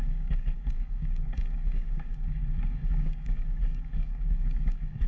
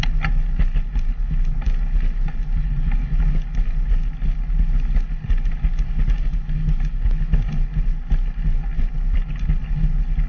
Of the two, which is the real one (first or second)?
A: second